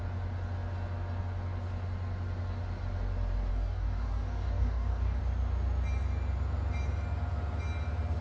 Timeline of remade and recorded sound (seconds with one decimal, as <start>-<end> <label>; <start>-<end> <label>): 0.0-3.5 recorded; 3.5-5.2 remade; 5.2-8.2 recorded